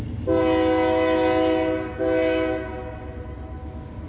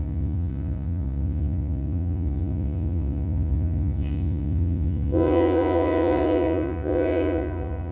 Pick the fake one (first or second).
second